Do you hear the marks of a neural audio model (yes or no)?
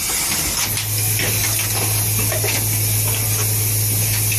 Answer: no